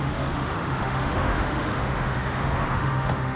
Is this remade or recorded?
remade